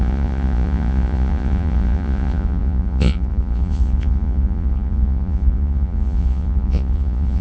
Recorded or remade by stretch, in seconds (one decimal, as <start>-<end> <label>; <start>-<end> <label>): 0.0-7.4 remade